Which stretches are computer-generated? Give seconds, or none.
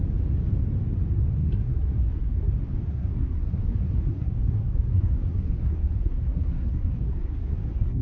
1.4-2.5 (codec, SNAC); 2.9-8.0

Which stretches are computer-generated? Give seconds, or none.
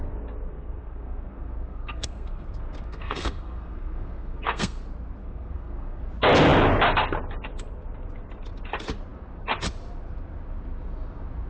0.5-4.8 (codec, SNAC); 5.2-6.0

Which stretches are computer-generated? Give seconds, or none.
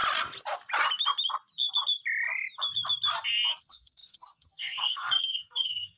3.6-6.0 (codec, SNAC)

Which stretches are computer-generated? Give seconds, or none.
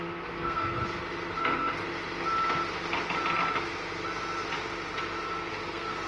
0.0-0.8 (codec, SNAC); 1.4-1.8; 5.5-6.1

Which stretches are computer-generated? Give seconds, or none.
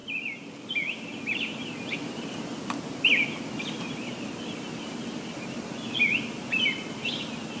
none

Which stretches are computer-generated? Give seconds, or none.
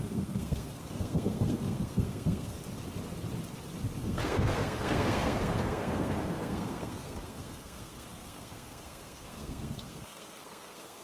0.0-2.6 (codec, SNAC); 4.0-11.0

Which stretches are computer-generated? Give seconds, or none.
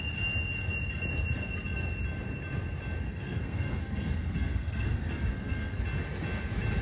3.0-5.8 (codec, SNAC)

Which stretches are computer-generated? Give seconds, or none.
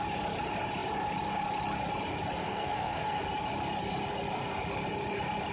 2.4-3.2 (codec, SNAC)